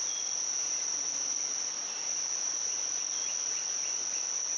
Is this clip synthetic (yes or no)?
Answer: no